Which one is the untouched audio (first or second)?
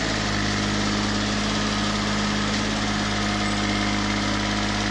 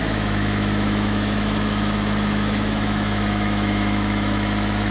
first